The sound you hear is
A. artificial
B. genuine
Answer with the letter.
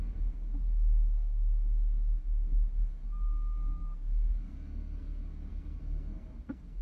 A